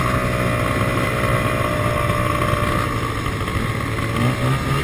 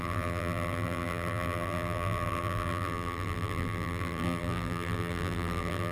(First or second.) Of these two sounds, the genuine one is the first